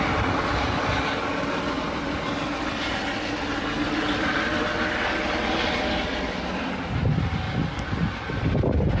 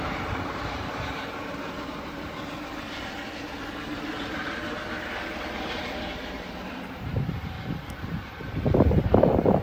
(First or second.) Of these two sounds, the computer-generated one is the second